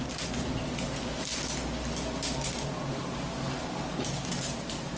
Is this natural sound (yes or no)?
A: yes